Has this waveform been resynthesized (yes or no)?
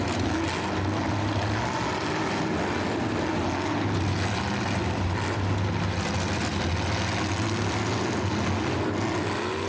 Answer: no